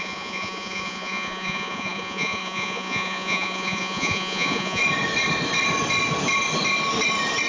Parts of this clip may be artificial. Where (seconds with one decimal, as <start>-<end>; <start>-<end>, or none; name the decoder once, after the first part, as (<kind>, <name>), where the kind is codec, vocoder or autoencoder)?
0.0-4.8 (vocoder, Vocos)